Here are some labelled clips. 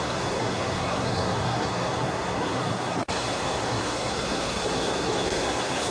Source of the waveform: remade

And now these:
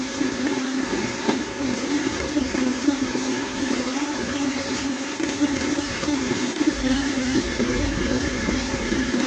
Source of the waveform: remade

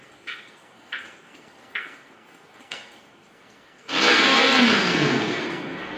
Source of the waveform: remade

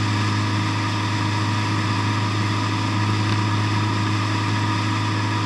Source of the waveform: recorded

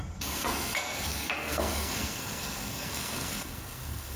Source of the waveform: remade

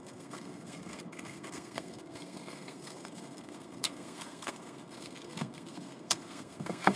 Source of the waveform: remade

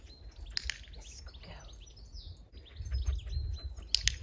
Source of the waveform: recorded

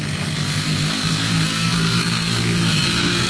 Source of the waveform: remade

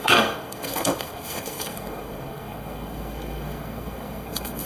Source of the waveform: remade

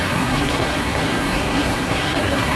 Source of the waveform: remade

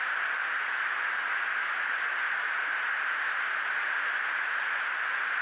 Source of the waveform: recorded